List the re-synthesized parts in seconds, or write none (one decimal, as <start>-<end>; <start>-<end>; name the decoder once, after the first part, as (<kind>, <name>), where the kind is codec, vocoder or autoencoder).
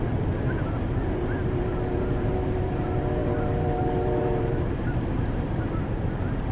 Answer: 0.0-6.5 (vocoder, BigVGAN v2)